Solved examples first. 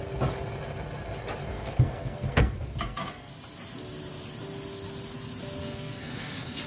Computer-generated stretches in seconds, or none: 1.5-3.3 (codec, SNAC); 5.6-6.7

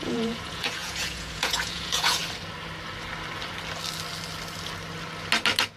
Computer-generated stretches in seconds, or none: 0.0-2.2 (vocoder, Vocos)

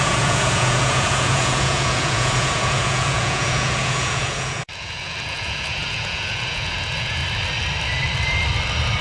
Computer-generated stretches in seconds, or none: 0.0-7.2 (vocoder, Vocos)